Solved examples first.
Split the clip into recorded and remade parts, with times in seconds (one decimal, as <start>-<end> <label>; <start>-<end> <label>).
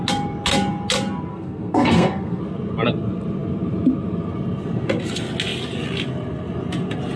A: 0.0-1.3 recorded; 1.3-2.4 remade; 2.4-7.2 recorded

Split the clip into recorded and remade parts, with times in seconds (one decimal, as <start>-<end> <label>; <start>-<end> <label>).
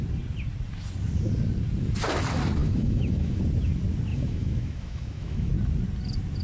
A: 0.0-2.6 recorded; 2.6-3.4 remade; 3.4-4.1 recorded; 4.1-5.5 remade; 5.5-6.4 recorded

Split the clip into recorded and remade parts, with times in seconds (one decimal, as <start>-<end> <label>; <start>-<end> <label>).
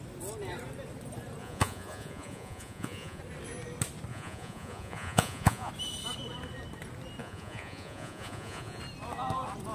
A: 0.0-1.4 recorded; 1.4-3.2 remade; 3.2-4.1 recorded; 4.1-5.7 remade; 5.7-7.2 recorded; 7.2-8.8 remade; 8.8-9.7 recorded